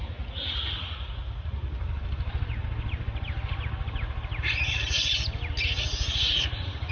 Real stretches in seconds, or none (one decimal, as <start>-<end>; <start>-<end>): 1.6-5.7